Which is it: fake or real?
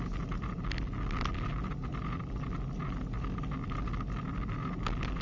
real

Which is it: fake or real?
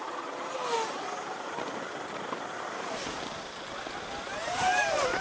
real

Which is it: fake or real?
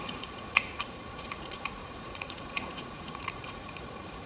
fake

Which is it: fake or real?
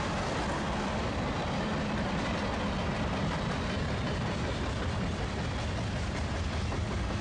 real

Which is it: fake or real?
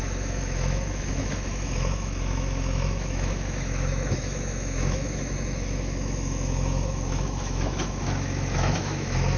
fake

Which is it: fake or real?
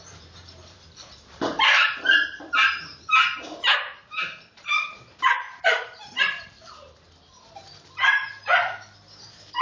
fake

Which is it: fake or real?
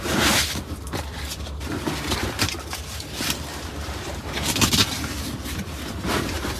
fake